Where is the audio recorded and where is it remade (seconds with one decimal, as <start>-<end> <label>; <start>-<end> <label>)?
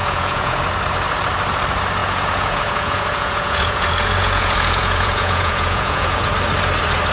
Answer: 0.0-0.6 remade; 0.6-2.0 recorded; 2.0-6.3 remade; 6.3-7.1 recorded